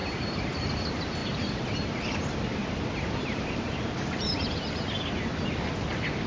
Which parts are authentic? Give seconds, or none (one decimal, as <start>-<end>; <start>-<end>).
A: 0.7-1.2; 5.0-6.3